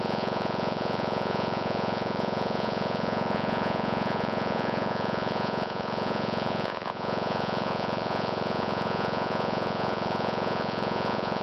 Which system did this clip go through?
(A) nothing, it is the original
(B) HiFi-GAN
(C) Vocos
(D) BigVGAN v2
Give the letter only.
C